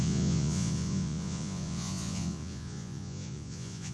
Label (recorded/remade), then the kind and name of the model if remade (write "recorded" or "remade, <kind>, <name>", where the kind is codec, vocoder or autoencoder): remade, vocoder, Vocos